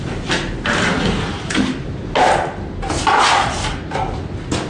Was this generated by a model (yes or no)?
no